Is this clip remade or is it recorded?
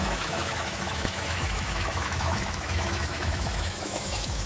remade